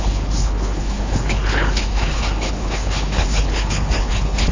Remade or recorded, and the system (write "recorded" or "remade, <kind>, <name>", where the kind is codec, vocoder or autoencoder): remade, codec, HILCodec